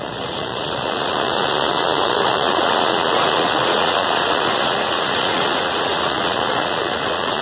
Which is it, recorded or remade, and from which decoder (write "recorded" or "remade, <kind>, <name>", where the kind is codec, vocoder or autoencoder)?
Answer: remade, vocoder, Vocos